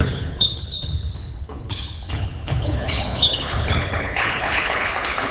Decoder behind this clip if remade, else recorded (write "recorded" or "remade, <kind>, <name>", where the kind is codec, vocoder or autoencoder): remade, codec, HILCodec